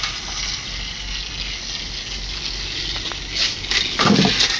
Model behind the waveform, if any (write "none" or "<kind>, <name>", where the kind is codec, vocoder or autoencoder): none